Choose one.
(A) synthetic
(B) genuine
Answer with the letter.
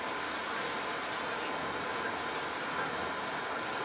B